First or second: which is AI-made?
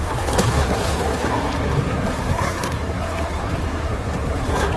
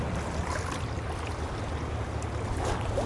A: first